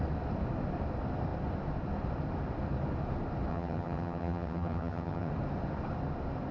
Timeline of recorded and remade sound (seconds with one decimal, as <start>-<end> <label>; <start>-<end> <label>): 0.0-3.5 recorded; 3.5-5.3 remade; 5.3-6.5 recorded